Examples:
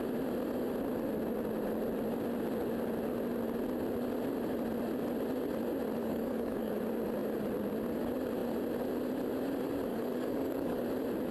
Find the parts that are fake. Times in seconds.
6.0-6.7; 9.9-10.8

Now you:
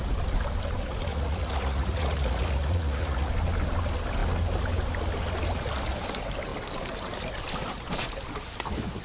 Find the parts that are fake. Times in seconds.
1.1-3.3